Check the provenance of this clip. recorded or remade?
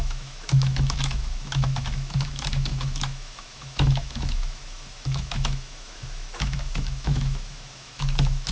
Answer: remade